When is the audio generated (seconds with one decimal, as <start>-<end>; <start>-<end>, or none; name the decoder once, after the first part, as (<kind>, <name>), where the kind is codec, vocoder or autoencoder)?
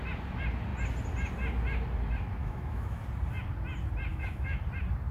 2.4-3.0 (autoencoder, DAC-VAE); 4.1-4.6